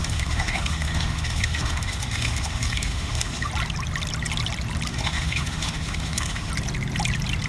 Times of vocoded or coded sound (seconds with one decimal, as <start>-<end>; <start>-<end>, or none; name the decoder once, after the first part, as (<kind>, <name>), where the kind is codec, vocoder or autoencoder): 0.0-3.5 (autoencoder, DAC-VAE); 4.9-6.5